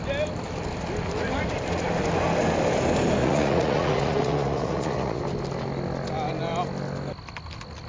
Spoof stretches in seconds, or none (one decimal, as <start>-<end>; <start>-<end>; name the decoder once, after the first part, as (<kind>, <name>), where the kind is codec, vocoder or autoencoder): 3.2-5.2 (vocoder, Vocos)